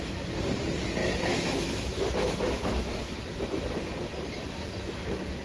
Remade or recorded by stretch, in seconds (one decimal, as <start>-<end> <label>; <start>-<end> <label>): 0.0-1.0 recorded; 1.0-3.2 remade; 3.2-5.4 recorded